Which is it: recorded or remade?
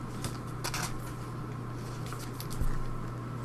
recorded